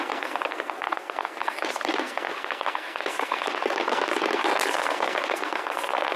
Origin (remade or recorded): remade